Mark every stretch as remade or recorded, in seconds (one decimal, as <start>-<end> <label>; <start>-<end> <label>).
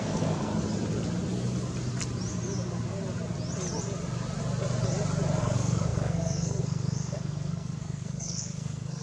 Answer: 0.0-0.5 remade; 0.5-5.4 recorded; 5.4-9.0 remade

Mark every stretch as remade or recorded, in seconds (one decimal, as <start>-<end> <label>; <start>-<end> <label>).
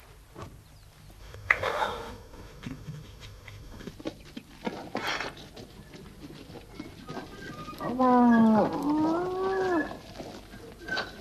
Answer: 0.0-1.2 recorded; 1.2-3.9 remade; 3.9-11.2 recorded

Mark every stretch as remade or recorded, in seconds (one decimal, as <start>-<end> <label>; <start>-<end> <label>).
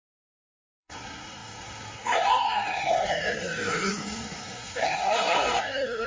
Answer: 0.0-6.1 remade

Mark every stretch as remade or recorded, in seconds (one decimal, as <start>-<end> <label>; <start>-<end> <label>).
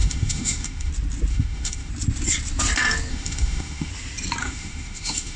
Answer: 0.0-0.9 remade; 0.9-1.3 recorded; 1.3-1.9 remade; 1.9-3.1 recorded; 3.1-3.9 remade; 3.9-4.4 recorded; 4.4-5.4 remade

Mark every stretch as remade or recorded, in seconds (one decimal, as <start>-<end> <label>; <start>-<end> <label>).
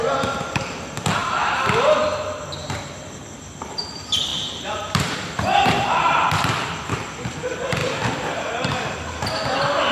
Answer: 0.0-4.3 recorded; 4.3-6.3 remade; 6.3-7.8 recorded; 7.8-8.5 remade; 8.5-9.9 recorded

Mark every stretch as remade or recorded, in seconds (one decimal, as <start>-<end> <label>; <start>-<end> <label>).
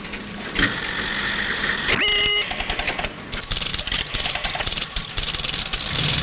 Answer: 0.0-3.7 recorded; 3.7-5.3 remade; 5.3-6.2 recorded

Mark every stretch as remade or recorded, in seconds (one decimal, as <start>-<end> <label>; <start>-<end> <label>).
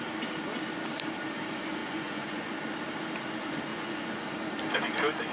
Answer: 0.0-1.8 recorded; 1.8-2.5 remade; 2.5-3.7 recorded; 3.7-4.3 remade; 4.3-5.3 recorded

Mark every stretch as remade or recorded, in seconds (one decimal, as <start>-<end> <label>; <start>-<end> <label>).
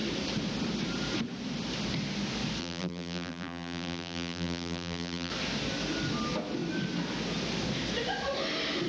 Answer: 0.0-2.6 recorded; 2.6-5.3 remade; 5.3-8.9 recorded